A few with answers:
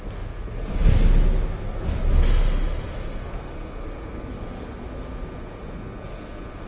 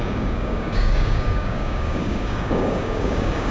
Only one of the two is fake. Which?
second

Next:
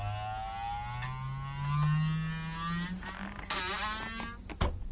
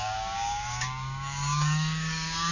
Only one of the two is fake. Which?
second